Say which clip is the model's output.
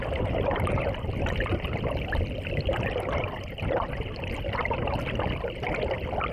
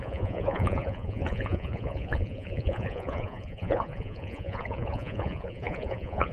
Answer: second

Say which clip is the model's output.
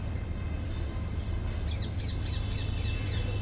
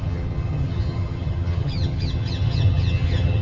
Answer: second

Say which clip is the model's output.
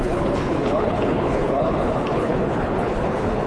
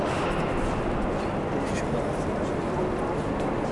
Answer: first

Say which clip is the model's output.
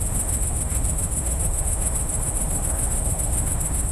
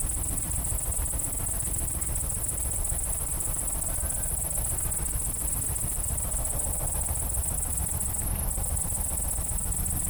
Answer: first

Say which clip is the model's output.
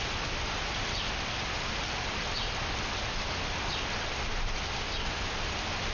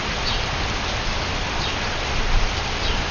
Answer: second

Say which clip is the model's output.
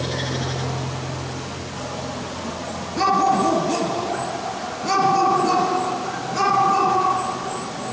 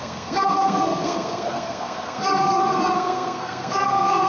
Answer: second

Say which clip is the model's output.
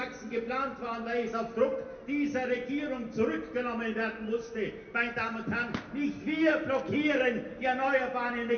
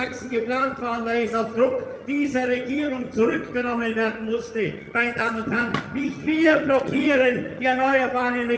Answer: second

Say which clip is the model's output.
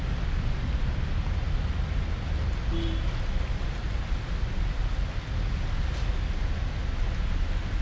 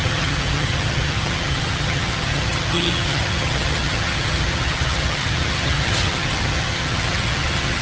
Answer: second